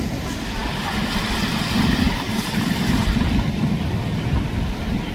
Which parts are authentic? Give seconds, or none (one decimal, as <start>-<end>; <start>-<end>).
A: 0.0-5.1